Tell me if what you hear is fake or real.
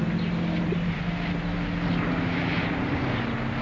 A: real